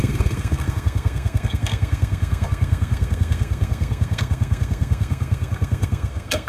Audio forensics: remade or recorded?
remade